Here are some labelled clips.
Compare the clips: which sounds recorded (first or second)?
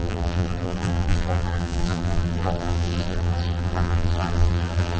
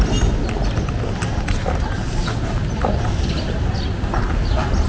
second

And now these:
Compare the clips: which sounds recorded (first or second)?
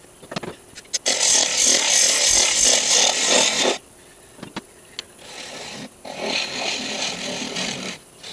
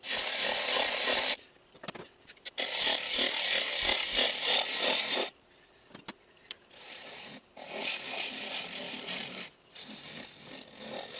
first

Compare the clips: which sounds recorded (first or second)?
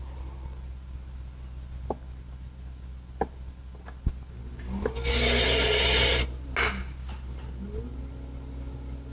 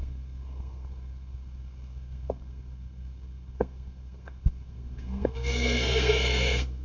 first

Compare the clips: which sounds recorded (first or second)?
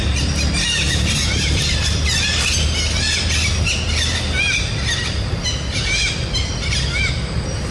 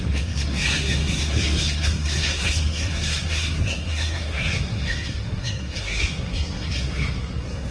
first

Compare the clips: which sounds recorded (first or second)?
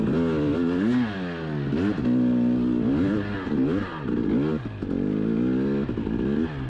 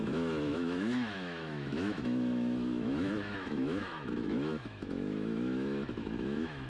first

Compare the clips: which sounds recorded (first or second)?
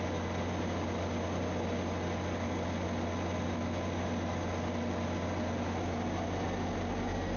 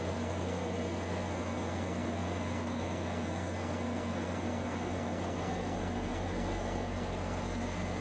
first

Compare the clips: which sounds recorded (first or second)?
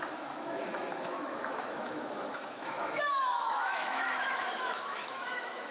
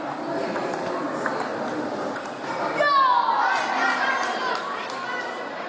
second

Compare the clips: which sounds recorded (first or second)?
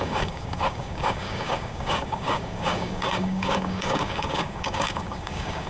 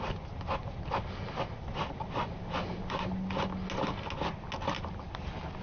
second